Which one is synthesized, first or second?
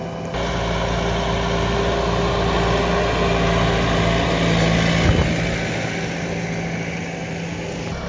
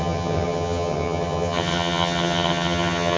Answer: second